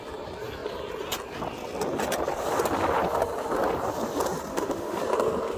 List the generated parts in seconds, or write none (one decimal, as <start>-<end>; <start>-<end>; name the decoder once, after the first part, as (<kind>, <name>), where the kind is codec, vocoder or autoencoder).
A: 4.5-5.0 (autoencoder, DAC-VAE)